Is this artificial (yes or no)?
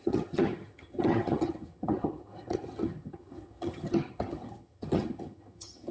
yes